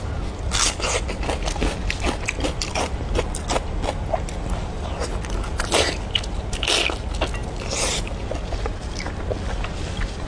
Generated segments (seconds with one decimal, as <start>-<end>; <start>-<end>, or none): none